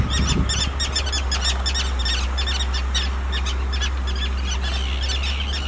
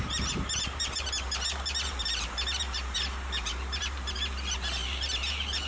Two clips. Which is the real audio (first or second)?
first